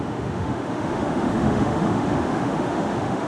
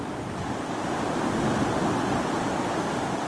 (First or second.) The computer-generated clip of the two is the first